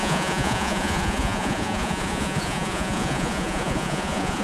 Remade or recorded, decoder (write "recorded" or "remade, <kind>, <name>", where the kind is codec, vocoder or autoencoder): remade, vocoder, Vocos